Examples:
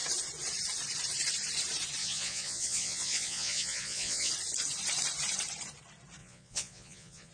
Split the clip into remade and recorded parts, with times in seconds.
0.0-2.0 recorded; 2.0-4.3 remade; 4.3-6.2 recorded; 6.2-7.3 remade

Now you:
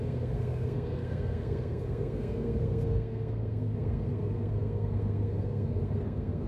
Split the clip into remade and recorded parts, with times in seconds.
0.0-6.5 remade

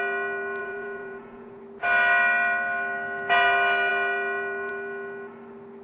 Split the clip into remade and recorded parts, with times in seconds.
0.0-0.6 recorded; 0.6-1.6 remade; 1.6-5.8 recorded